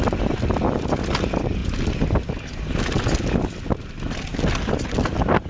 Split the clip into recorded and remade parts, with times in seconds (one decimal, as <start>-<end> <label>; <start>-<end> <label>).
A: 0.0-5.5 recorded